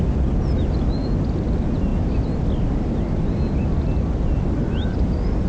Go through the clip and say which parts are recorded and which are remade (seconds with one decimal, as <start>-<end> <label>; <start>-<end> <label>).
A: 0.0-5.5 recorded